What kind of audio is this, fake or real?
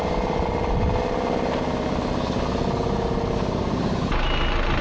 real